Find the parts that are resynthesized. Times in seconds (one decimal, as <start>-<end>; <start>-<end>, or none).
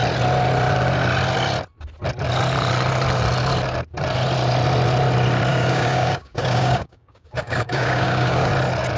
5.5-8.5